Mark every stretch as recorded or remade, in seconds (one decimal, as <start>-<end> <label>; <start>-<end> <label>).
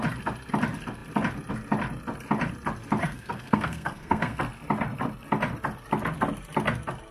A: 0.0-3.0 recorded; 3.0-4.4 remade; 4.4-7.1 recorded